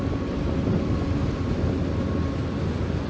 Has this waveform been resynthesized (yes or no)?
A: no